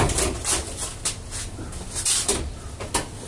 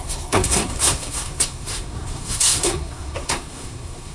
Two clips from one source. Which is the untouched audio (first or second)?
first